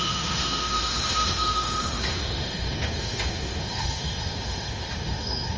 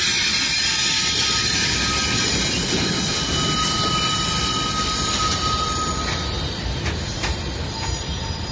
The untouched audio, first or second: second